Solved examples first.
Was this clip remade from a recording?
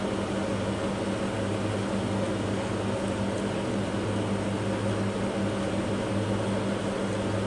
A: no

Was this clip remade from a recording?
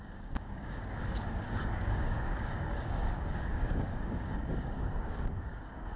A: yes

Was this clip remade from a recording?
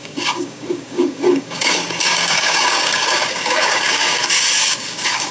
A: yes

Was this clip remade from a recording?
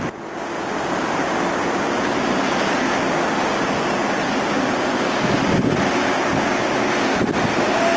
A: no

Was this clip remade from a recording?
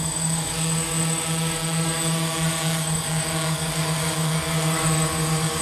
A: yes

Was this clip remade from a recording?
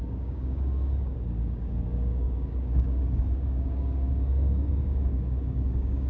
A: yes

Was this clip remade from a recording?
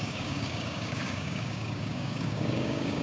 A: yes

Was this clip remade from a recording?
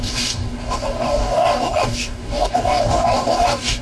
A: yes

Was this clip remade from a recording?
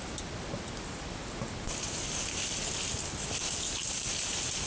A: no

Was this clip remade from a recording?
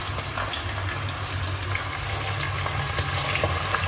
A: no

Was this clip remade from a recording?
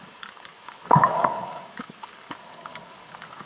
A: yes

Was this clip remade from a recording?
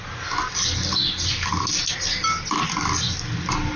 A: no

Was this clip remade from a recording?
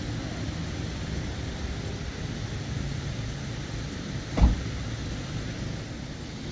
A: no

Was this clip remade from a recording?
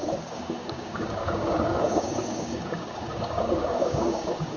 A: yes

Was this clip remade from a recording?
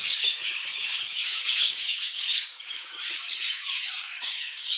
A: yes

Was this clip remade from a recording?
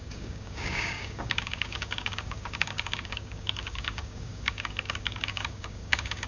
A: yes